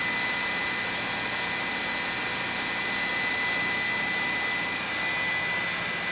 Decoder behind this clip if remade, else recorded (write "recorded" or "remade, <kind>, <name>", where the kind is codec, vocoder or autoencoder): recorded